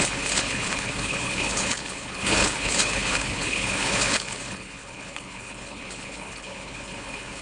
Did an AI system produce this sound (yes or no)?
yes